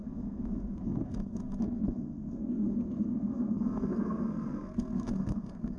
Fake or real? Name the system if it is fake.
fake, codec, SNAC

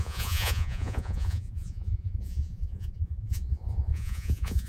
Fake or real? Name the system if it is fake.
fake, vocoder, Vocos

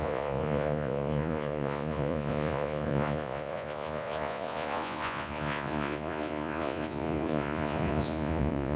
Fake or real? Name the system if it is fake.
fake, vocoder, Vocos